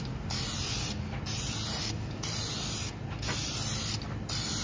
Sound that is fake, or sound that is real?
real